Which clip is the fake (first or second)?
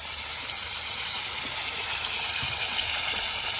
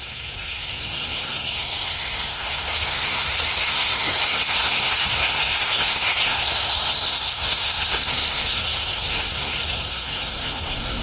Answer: second